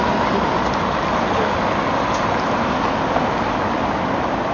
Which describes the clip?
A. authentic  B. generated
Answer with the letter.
A